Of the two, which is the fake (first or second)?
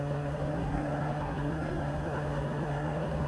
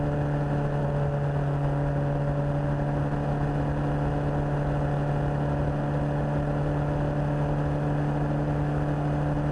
first